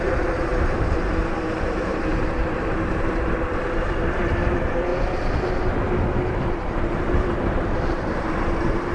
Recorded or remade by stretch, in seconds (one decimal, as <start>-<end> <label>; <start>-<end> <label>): 0.0-8.9 remade